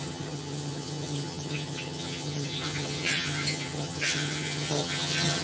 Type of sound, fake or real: fake